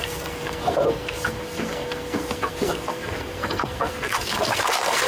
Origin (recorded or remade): remade